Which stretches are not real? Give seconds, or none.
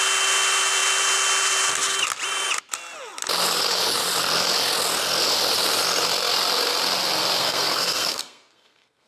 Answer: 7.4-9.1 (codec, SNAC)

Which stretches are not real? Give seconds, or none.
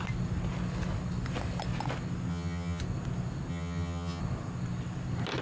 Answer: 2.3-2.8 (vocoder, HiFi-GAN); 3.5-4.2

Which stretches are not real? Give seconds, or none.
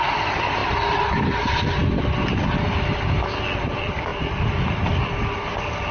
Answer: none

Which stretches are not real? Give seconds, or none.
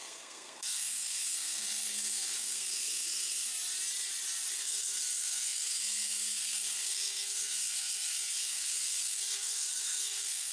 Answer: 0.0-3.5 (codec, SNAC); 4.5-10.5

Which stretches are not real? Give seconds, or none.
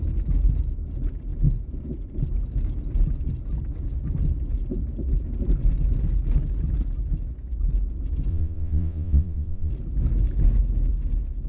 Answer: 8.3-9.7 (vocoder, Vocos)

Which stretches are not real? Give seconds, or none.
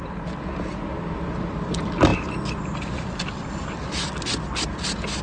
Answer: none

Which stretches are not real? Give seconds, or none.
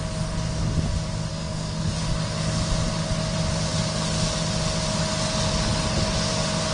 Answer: 1.3-1.9 (codec, SNAC)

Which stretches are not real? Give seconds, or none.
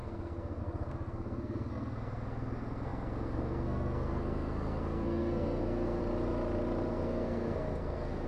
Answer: 0.0-6.0 (codec, SNAC); 6.9-8.3